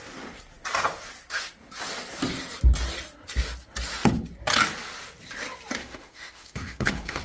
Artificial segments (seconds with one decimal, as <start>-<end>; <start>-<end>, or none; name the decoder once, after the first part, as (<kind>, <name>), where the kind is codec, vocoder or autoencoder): 5.8-7.2 (autoencoder, DAC-VAE)